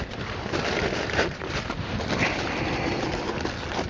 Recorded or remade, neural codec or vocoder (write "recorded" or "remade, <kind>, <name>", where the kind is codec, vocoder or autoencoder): recorded